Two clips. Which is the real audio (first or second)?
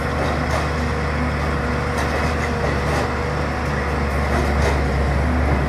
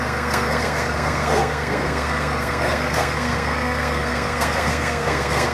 first